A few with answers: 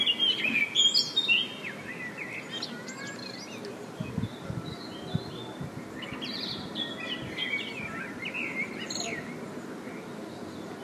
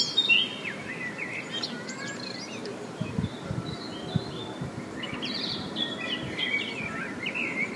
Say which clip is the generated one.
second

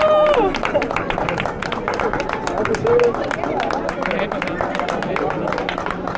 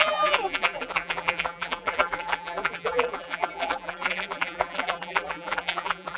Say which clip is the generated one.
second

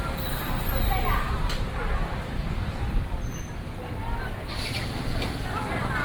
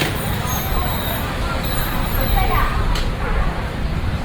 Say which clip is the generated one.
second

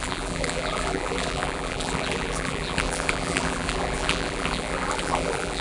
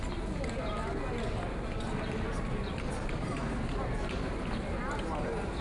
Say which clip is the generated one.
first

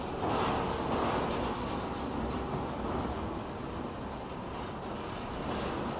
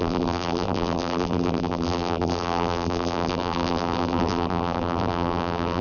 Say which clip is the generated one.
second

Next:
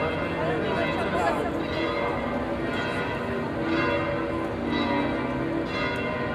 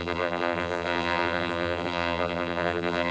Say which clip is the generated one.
second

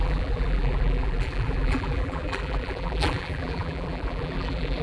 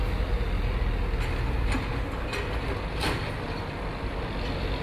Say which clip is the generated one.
first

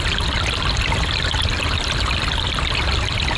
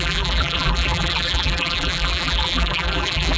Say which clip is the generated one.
second